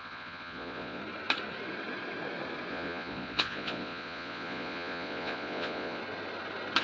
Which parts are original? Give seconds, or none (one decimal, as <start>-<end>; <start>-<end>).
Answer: 1.0-2.7; 6.0-6.8